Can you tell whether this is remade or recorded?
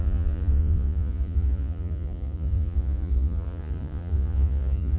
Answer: remade